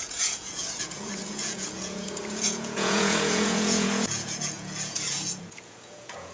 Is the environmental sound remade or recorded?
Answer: remade